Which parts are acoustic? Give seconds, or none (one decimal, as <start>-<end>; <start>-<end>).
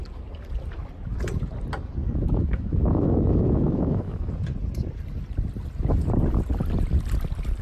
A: 0.0-2.0; 4.3-7.6